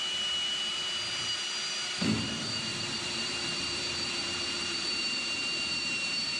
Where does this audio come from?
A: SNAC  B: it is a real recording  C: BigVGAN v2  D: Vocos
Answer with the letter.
C